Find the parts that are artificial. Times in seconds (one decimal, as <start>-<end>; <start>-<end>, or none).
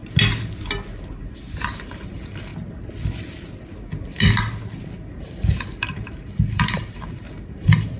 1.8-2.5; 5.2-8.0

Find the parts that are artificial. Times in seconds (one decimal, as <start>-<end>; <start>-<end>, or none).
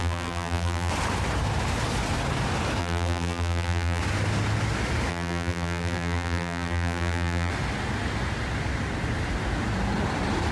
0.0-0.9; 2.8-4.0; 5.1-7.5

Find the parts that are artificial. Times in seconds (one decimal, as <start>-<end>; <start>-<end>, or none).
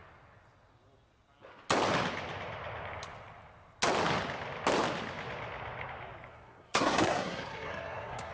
6.3-8.3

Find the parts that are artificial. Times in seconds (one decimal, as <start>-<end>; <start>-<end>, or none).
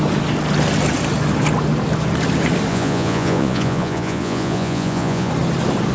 2.7-5.3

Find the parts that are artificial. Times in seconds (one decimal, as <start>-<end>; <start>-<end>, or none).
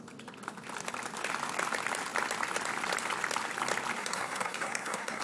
4.0-5.2